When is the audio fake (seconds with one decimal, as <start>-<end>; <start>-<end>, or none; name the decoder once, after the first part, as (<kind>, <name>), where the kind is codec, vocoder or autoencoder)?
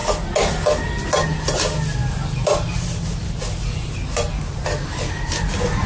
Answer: none